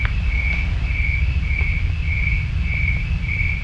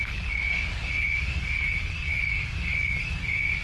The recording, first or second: first